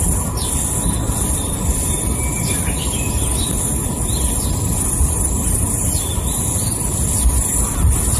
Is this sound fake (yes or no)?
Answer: no